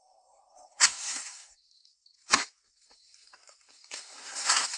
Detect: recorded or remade remade